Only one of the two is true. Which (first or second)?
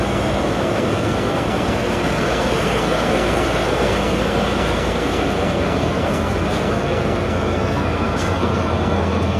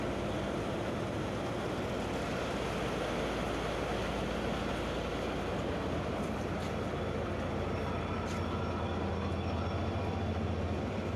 second